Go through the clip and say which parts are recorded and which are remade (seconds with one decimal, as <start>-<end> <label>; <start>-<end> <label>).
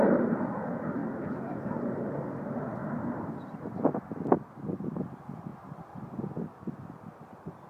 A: 0.0-7.7 recorded